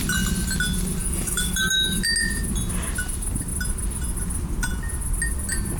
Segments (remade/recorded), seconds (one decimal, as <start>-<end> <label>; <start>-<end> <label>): 0.0-1.0 recorded; 1.0-2.0 remade; 2.0-5.8 recorded